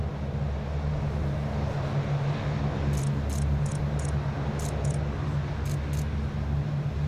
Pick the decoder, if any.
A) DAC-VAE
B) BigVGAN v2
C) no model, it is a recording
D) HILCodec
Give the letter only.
C